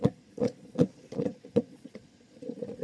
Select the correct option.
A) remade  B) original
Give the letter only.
A